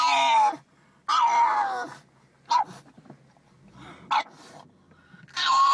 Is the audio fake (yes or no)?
no